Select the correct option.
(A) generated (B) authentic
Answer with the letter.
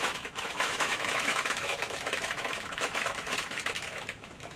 A